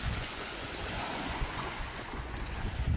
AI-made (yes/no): yes